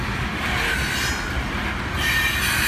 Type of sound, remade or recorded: recorded